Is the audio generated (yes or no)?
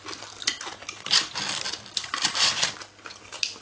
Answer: no